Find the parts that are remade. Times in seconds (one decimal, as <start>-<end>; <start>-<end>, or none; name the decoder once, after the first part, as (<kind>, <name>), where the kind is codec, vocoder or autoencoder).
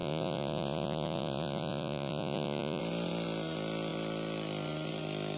0.0-2.8 (vocoder, Vocos)